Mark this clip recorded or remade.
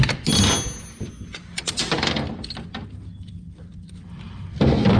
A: recorded